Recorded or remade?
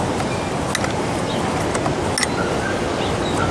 recorded